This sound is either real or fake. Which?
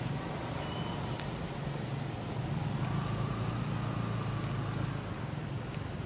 real